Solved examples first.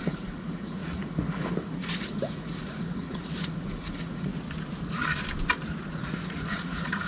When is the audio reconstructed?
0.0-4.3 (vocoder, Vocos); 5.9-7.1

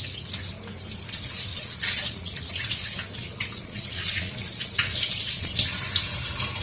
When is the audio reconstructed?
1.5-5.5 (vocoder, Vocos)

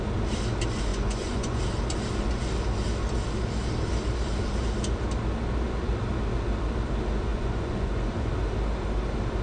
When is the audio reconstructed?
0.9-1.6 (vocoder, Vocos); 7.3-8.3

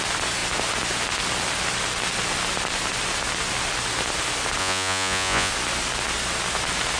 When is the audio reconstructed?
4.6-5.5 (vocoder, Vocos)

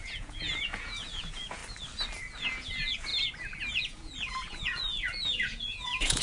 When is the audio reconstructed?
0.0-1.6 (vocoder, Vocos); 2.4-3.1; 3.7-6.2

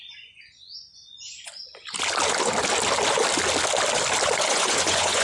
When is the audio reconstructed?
0.0-1.5 (vocoder, Vocos); 4.5-5.2